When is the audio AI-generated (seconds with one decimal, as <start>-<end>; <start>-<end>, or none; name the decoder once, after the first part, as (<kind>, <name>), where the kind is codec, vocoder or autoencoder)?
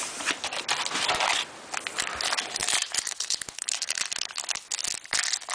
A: 2.6-4.0 (vocoder, BigVGAN v2)